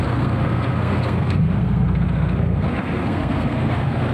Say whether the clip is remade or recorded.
remade